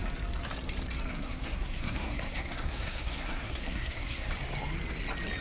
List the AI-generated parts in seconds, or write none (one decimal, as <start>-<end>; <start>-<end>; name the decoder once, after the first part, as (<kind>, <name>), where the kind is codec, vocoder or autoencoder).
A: 1.1-4.3 (codec, SNAC)